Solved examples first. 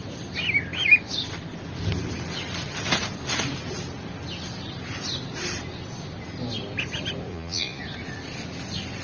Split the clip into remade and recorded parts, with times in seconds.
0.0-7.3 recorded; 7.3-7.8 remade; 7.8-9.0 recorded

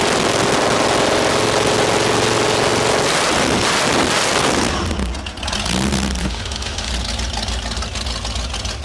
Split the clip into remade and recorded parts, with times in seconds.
0.0-6.2 recorded; 6.2-6.9 remade; 6.9-8.8 recorded

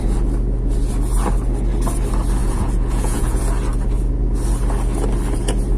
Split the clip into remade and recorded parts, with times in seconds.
0.0-2.4 recorded; 2.4-3.4 remade; 3.4-5.8 recorded